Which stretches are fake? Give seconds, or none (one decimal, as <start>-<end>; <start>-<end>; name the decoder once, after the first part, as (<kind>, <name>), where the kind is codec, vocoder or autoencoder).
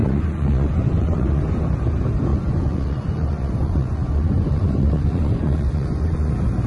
0.0-1.4 (vocoder, Vocos); 2.3-6.3